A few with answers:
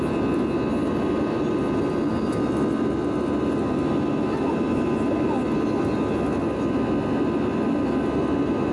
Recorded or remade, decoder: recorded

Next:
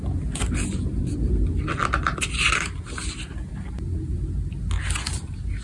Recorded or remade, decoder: recorded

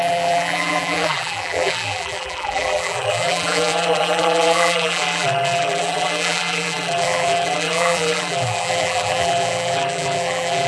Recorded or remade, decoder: remade, vocoder, BigVGAN v2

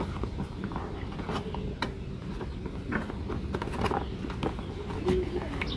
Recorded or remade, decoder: recorded